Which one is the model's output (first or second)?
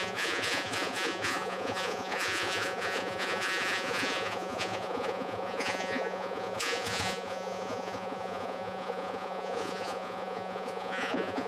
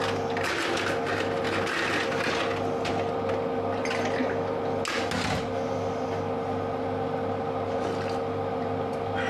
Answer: first